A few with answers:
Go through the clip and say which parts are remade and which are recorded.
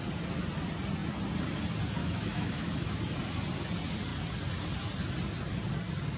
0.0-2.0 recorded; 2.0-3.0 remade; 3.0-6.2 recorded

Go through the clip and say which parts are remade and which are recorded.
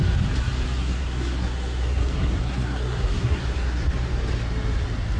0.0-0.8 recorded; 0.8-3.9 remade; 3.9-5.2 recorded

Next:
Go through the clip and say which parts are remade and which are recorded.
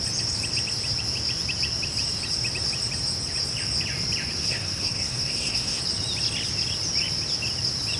0.0-4.4 recorded; 4.4-5.8 remade; 5.8-8.0 recorded